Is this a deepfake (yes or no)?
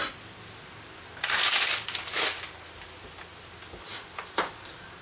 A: no